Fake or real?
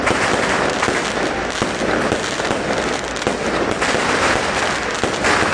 real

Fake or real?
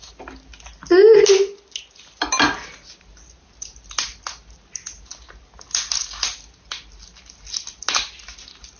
real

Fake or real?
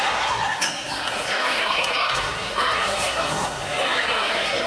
fake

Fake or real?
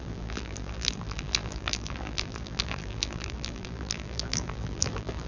fake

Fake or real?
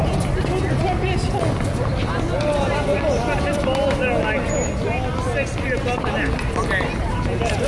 real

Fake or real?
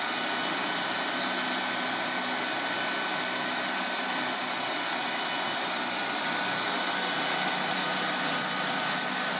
real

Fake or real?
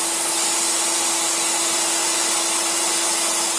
real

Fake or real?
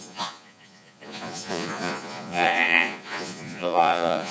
fake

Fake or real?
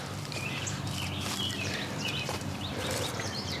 fake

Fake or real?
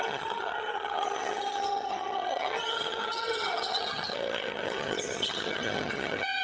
fake